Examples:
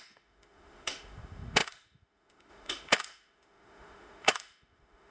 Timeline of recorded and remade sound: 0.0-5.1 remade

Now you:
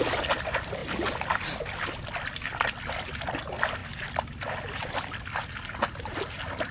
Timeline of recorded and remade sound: 0.0-6.7 recorded

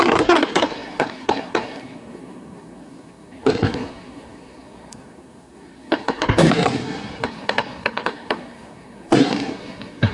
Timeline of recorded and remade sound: 0.0-10.1 remade

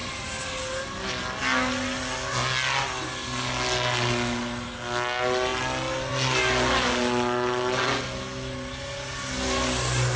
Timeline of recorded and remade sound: 0.0-10.2 recorded